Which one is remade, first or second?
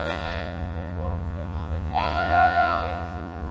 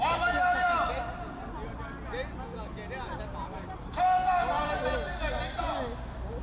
first